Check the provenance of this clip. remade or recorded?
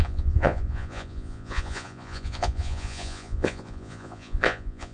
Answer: remade